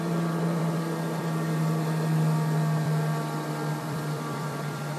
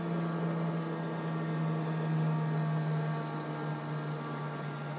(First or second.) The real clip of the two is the second